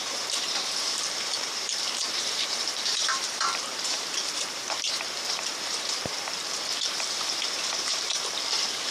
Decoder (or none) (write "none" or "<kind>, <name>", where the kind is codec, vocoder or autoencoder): vocoder, BigVGAN v2